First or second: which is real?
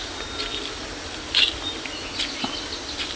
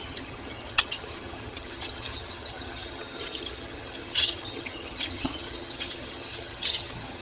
first